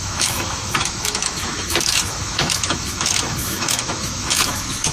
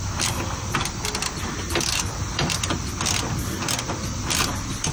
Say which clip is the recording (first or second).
second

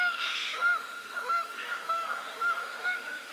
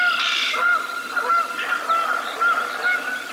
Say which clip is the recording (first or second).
second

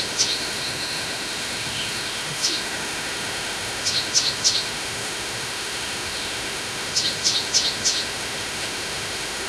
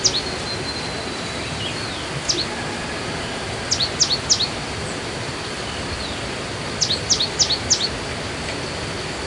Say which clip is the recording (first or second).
second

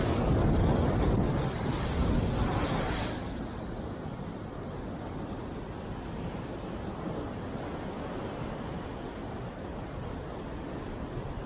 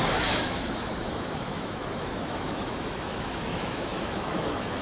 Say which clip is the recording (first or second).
first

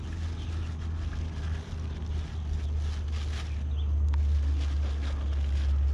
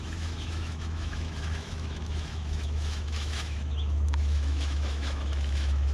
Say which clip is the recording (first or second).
first